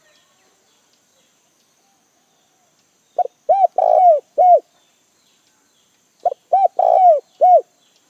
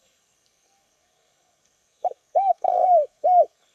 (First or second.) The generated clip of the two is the second